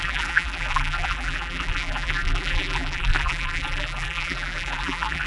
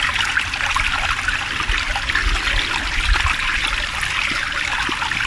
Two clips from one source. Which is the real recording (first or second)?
second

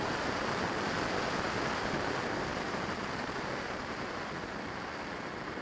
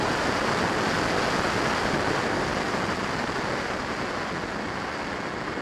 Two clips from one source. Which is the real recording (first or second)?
second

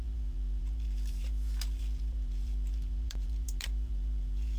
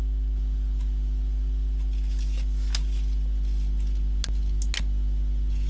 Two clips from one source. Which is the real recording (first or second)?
second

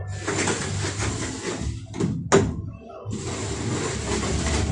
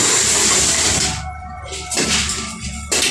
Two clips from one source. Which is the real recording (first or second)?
first